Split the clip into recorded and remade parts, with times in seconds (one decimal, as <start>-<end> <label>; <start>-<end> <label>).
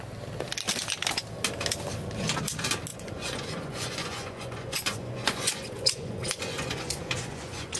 0.0-2.9 recorded; 2.9-7.8 remade